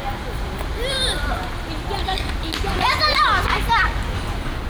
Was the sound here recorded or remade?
recorded